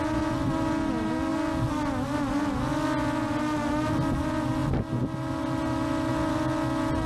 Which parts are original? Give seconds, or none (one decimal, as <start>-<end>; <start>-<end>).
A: 0.0-7.1